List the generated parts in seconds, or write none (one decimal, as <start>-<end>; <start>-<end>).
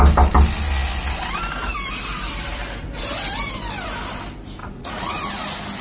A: 4.6-5.3